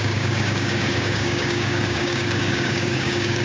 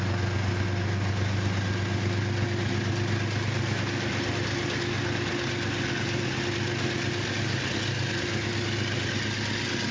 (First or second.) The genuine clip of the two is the second